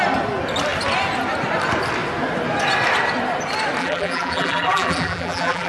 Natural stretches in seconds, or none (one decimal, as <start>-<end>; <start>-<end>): 0.0-3.8